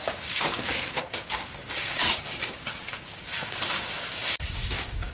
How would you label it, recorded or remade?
remade